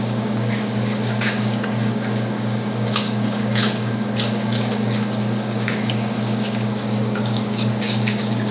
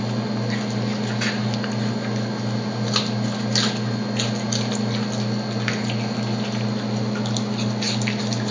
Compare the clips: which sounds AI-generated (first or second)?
first